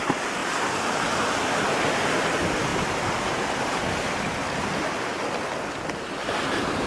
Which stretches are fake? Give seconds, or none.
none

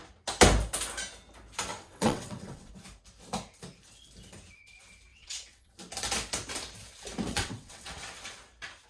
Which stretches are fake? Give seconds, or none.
1.7-2.7; 5.1-5.7; 7.3-8.0

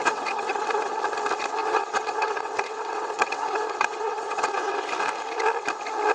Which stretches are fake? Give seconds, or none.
0.0-0.9; 1.6-4.8

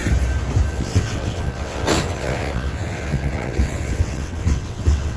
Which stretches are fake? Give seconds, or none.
0.7-5.2

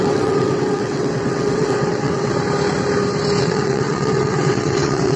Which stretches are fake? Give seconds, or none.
0.0-2.3; 3.4-5.2

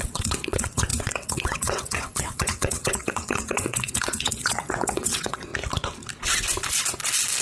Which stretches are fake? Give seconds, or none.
0.0-5.5

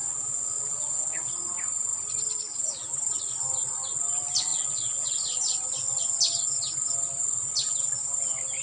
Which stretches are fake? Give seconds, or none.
0.0-1.3; 4.5-5.1